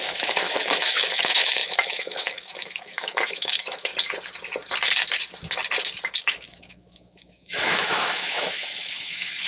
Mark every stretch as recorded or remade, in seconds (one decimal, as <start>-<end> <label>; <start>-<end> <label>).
0.0-3.9 remade; 3.9-6.2 recorded; 6.2-9.5 remade